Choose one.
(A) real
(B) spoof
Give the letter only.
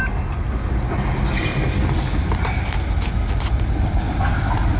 A